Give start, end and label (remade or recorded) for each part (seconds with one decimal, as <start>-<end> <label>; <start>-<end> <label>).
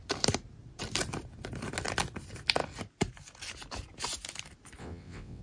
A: 0.0-4.8 recorded; 4.8-5.4 remade